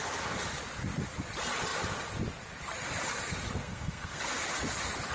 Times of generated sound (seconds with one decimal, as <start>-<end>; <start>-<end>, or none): 3.6-4.2